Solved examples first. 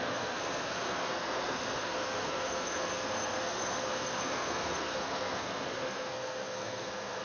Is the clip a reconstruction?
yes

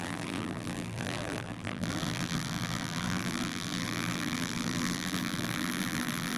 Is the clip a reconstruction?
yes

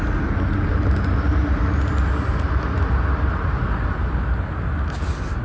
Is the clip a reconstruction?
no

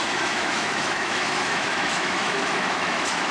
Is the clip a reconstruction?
yes